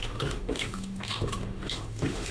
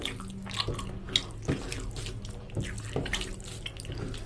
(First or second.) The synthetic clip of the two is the first